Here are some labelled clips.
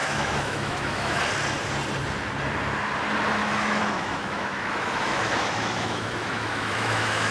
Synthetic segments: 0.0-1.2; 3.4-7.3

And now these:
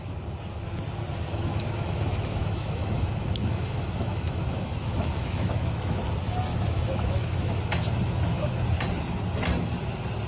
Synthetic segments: 1.3-6.0; 6.5-7.6

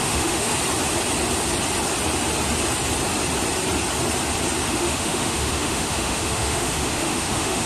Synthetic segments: 0.0-0.5; 4.7-7.7

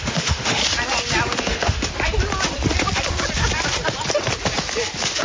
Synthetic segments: 0.0-0.6; 1.4-1.9

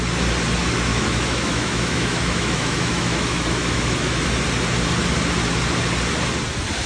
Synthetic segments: 0.9-4.3

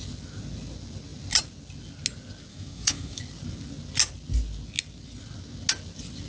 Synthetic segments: 2.5-3.2